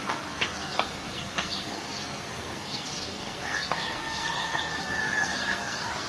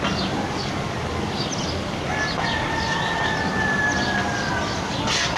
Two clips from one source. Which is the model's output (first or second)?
first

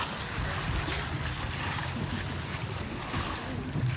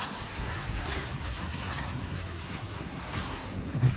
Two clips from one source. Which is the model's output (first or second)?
second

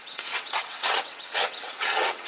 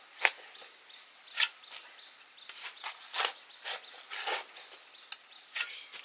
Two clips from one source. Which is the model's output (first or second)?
first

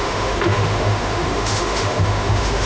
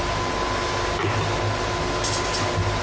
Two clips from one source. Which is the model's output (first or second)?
first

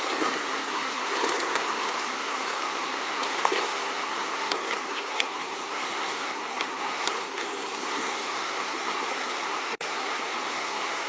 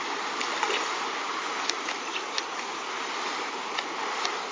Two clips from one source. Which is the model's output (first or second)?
first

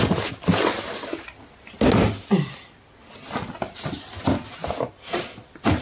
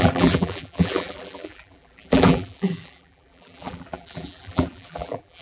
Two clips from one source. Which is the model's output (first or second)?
second